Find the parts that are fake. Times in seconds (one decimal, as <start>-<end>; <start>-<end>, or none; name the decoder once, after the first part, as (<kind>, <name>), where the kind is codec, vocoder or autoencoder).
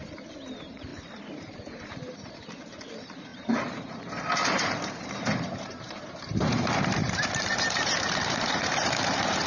0.0-0.9 (vocoder, BigVGAN v2); 1.4-9.5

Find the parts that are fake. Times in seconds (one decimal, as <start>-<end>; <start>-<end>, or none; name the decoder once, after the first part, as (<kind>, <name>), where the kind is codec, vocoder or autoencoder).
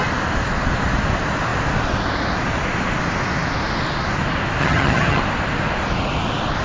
4.6-5.2 (vocoder, HiFi-GAN)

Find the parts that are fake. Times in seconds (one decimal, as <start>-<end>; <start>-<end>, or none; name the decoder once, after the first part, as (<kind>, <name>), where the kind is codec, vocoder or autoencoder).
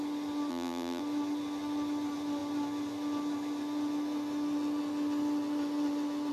0.5-1.0 (vocoder, BigVGAN v2)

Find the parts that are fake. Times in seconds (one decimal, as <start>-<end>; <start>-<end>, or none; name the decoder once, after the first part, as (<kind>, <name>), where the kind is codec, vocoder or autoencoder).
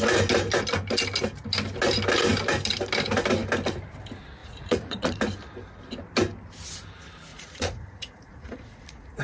4.4-5.2 (vocoder, Vocos); 7.3-9.2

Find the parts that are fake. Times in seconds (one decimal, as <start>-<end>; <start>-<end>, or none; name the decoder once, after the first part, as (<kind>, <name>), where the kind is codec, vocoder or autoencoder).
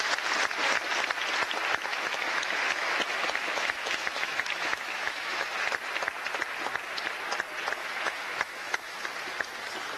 1.9-5.6 (autoencoder, DAC-VAE); 7.8-9.0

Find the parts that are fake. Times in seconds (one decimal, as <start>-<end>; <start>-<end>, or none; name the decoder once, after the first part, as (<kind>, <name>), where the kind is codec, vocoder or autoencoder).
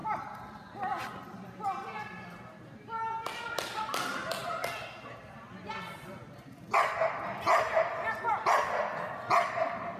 none